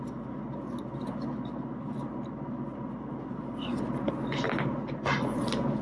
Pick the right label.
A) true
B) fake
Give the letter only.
A